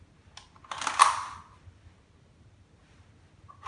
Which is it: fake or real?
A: real